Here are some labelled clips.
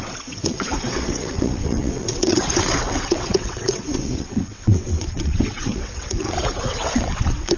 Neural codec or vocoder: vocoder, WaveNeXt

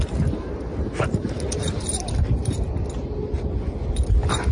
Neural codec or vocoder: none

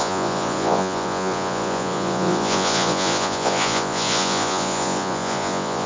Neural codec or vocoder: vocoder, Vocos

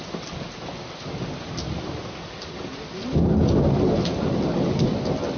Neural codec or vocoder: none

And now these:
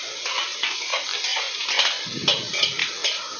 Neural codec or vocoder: none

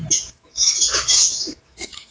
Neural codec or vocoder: autoencoder, DAC-VAE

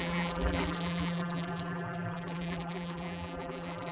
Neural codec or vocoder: vocoder, BigVGAN v2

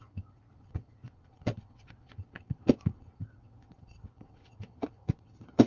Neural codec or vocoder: vocoder, WaveNeXt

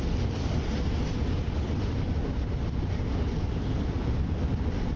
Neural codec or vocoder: none